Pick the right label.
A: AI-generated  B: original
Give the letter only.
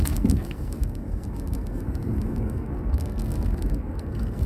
A